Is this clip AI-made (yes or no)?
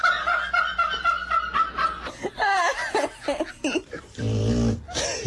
no